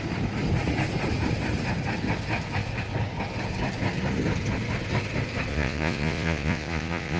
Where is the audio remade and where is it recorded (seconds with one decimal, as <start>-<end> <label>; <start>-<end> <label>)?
0.0-5.5 recorded; 5.5-7.2 remade